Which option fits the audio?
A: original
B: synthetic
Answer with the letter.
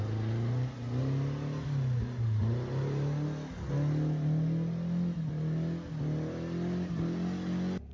A